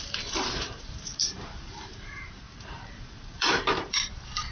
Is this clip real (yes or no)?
no